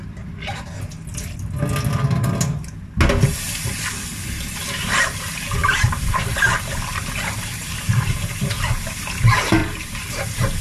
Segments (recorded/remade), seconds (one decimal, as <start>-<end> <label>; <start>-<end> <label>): 0.0-5.6 recorded; 5.6-9.1 remade; 9.1-9.6 recorded; 9.6-10.1 remade; 10.1-10.6 recorded